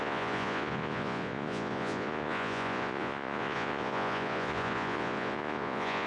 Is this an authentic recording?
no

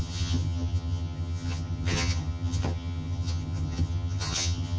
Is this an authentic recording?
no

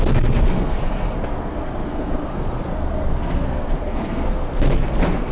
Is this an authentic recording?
no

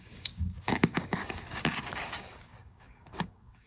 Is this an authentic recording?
no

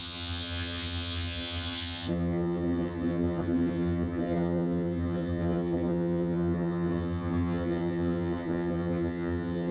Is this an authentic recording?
no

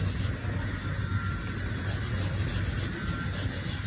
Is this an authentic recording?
yes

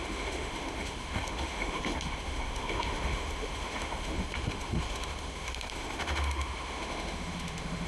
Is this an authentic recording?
no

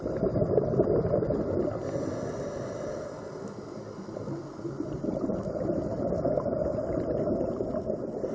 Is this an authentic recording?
yes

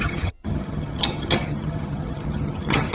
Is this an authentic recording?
no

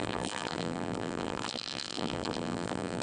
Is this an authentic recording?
no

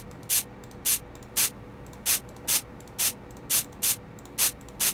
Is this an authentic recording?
yes